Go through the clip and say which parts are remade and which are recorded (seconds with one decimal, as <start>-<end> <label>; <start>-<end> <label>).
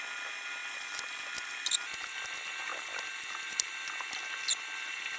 0.0-0.6 recorded; 0.6-3.7 remade; 3.7-5.2 recorded